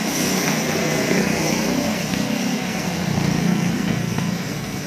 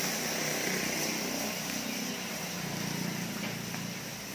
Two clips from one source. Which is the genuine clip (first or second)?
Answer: second